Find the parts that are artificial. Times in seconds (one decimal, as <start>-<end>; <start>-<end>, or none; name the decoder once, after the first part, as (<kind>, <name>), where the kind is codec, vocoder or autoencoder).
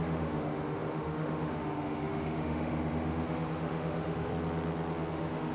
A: 0.0-4.3 (autoencoder, DAC-VAE); 5.1-5.5